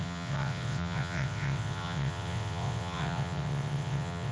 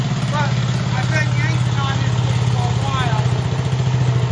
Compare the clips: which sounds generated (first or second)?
first